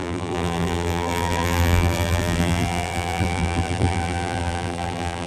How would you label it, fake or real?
fake